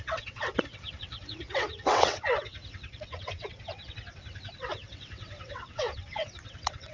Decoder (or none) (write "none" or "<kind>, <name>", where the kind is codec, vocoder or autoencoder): vocoder, WaveNeXt